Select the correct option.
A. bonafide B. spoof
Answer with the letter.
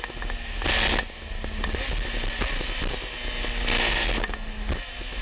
A